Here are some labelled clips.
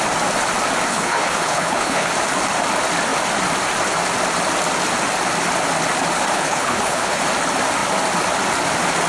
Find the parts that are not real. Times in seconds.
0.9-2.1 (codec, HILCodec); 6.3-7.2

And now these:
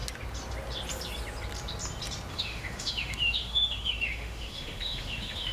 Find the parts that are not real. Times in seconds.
2.3-5.5 (autoencoder, DAC-VAE)

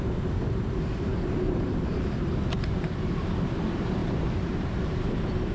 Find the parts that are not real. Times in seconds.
0.0-5.5 (vocoder, BigVGAN v2)

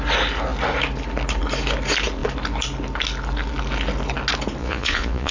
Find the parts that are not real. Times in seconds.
4.6-5.3 (vocoder, Vocos)

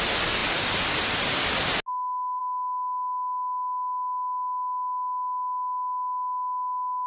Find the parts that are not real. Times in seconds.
none